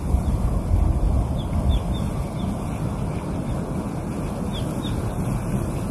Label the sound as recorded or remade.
recorded